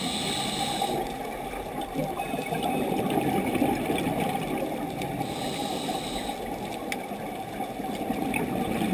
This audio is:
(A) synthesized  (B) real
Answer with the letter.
B